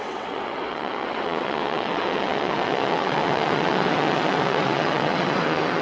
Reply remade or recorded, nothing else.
remade